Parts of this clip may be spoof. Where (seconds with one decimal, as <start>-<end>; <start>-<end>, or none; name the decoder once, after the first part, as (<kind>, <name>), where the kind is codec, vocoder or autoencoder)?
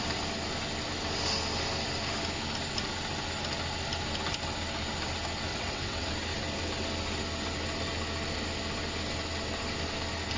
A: 5.5-6.1 (vocoder, WaveNeXt)